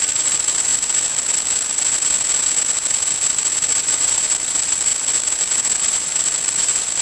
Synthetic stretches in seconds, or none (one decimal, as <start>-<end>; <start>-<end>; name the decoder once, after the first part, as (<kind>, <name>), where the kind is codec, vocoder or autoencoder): 0.0-0.7 (vocoder, BigVGAN v2); 3.7-4.9; 5.8-7.0